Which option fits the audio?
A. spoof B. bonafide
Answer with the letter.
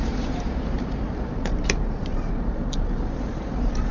A